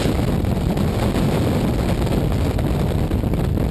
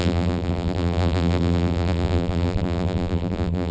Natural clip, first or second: first